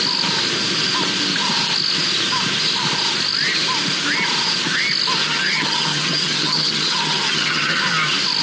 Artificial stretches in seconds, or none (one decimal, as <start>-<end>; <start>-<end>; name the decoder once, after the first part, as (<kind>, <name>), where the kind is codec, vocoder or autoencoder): 5.2-7.8 (vocoder, HiFi-GAN)